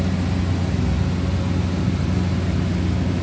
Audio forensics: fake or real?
real